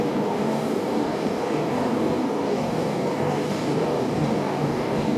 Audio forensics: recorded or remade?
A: remade